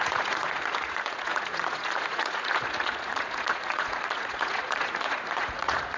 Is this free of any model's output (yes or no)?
no